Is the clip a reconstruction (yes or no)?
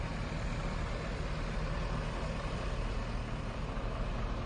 no